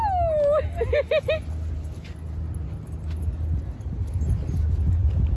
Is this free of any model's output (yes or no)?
yes